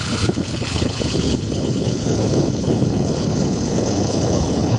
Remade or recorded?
remade